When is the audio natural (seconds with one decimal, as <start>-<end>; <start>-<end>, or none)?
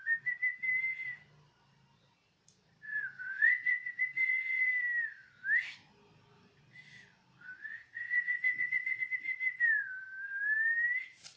0.0-2.9; 4.7-7.7; 9.0-11.4